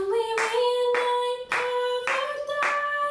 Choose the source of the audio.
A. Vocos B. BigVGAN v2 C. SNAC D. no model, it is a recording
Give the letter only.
D